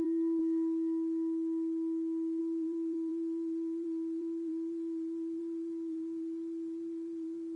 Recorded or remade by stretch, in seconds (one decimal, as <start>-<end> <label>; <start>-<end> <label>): 0.0-0.4 remade; 0.4-2.4 recorded; 2.4-7.6 remade